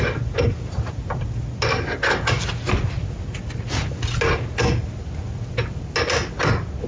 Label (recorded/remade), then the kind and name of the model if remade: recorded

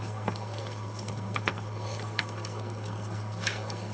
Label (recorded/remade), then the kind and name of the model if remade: remade, codec, SNAC